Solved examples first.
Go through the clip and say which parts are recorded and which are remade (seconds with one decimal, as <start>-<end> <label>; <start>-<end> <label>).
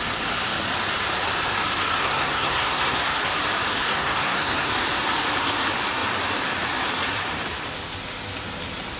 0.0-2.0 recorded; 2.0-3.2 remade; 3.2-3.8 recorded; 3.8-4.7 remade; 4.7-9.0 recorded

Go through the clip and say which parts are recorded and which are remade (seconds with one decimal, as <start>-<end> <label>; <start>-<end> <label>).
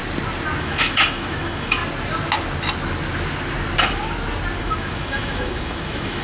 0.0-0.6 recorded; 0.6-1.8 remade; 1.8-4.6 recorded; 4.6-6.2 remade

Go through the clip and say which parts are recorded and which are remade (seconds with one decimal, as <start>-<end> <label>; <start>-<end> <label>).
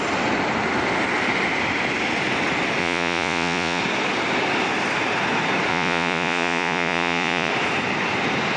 0.0-2.8 recorded; 2.8-3.8 remade; 3.8-5.7 recorded; 5.7-7.5 remade; 7.5-8.6 recorded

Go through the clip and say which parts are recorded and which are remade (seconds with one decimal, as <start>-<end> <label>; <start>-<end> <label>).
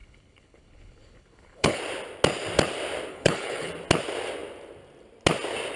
0.0-1.8 remade; 1.8-3.1 recorded; 3.1-3.7 remade; 3.7-5.8 recorded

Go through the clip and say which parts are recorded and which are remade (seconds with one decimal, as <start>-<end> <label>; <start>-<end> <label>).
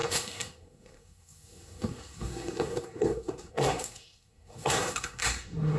0.0-5.8 remade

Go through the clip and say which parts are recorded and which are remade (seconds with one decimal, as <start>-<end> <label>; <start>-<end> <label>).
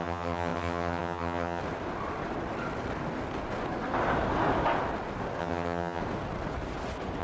0.0-1.6 remade; 1.6-5.4 recorded; 5.4-6.0 remade; 6.0-7.2 recorded